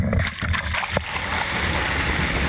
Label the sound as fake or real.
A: real